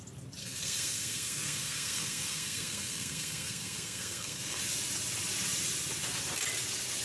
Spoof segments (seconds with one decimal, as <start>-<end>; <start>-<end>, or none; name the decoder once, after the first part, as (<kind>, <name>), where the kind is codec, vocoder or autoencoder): 0.4-4.6 (codec, SNAC)

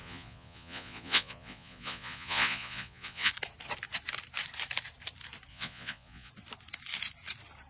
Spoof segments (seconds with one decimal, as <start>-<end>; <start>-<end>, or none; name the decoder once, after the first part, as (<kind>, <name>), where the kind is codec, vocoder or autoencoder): 0.0-3.3 (vocoder, Vocos); 5.5-6.3

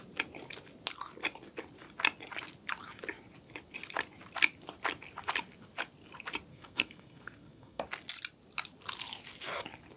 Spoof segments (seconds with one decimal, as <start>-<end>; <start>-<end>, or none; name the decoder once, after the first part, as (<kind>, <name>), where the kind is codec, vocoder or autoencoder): 6.5-7.8 (codec, SNAC)

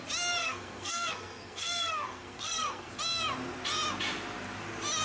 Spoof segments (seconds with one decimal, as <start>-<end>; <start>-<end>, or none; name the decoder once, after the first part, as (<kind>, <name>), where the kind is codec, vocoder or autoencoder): 0.4-2.9 (codec, SNAC)

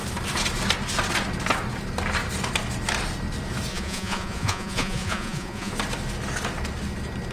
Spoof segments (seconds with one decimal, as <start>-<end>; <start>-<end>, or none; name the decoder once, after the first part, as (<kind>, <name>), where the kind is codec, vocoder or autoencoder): 3.7-5.7 (vocoder, Vocos)

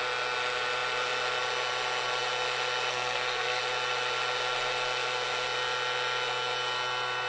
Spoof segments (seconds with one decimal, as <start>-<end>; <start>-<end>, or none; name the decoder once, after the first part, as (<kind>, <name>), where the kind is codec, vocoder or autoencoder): 2.9-3.6 (codec, SNAC)

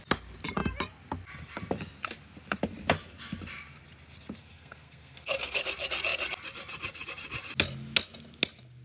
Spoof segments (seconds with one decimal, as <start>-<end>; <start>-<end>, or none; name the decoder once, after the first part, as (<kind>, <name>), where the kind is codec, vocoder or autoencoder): 4.4-5.6 (codec, SNAC)